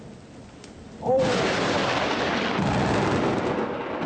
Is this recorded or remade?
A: recorded